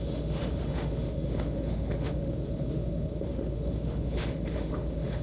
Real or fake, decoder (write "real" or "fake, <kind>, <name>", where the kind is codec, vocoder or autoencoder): fake, autoencoder, DAC-VAE